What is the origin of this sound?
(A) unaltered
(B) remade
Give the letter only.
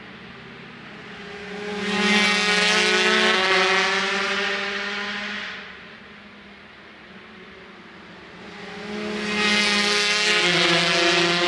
A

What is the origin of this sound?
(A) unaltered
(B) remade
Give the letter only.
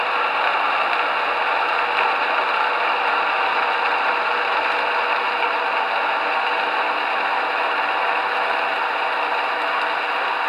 A